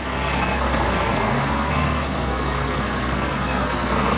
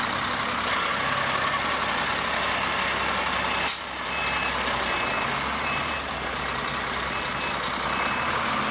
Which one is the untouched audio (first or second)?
second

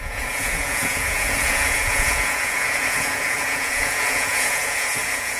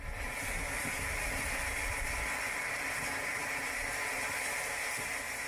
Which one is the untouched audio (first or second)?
second